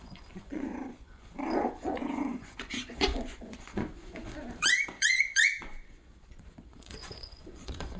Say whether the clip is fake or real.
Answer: fake